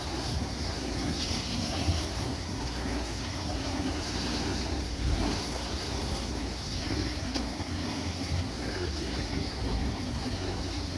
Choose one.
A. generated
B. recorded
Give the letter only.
A